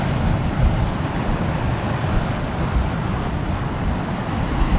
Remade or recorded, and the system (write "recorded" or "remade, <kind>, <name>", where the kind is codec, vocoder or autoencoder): recorded